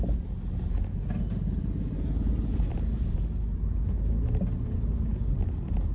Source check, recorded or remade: recorded